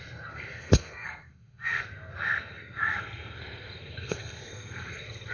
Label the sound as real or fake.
fake